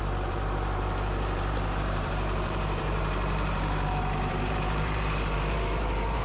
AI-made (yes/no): yes